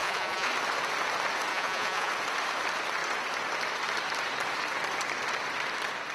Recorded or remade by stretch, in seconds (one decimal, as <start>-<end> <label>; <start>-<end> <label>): 0.0-0.5 remade; 0.5-1.5 recorded; 1.5-2.1 remade; 2.1-6.1 recorded